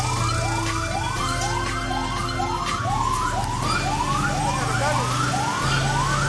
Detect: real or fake real